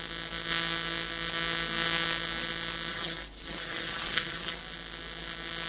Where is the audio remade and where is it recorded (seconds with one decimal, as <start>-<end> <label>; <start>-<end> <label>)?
0.0-2.9 recorded; 2.9-4.6 remade; 4.6-5.7 recorded